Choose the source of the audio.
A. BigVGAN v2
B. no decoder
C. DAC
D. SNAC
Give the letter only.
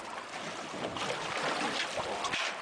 B